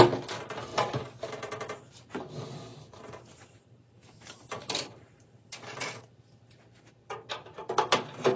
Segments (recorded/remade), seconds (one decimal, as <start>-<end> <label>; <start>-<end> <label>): 0.0-0.7 recorded; 0.7-2.1 remade; 2.1-2.7 recorded; 2.7-6.1 remade; 6.1-8.4 recorded